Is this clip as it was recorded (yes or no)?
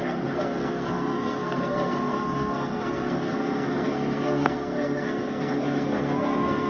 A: no